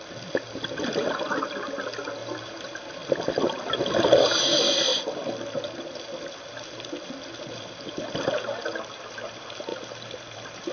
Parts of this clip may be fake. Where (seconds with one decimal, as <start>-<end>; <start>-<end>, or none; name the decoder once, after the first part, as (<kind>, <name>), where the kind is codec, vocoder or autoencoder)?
2.2-3.1 (vocoder, BigVGAN v2); 4.9-8.1; 9.7-10.7